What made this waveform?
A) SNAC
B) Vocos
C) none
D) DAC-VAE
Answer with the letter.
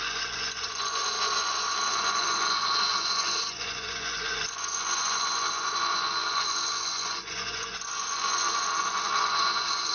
B